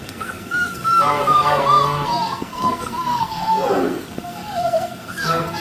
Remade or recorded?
remade